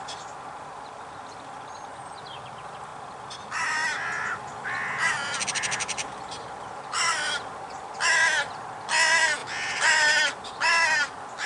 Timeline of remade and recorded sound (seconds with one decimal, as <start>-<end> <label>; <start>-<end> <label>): 0.0-11.5 recorded